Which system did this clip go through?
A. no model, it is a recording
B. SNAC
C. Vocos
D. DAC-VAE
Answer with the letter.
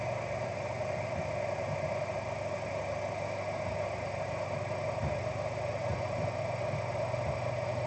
A